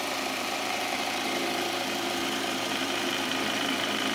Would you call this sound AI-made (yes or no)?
yes